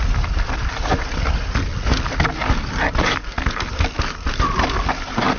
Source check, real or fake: real